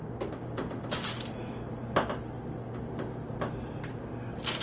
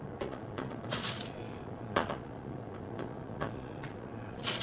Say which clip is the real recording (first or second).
first